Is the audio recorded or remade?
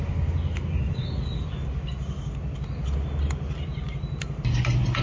recorded